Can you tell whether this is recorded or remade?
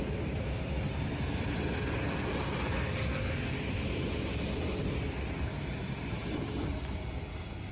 recorded